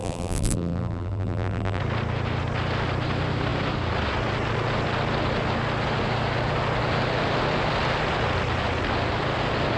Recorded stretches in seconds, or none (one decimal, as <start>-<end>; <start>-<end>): 1.8-9.8